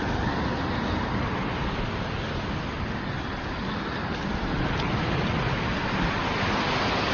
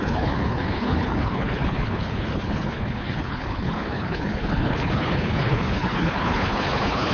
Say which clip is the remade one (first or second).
second